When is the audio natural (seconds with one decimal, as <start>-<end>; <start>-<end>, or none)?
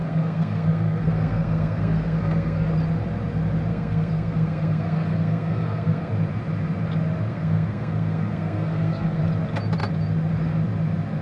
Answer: 2.7-3.7; 6.1-7.3; 9.2-11.2